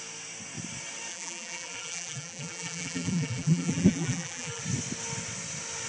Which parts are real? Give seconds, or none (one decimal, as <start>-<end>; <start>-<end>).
0.0-1.1; 4.6-5.9